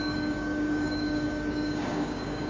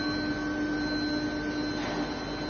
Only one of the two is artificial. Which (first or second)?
first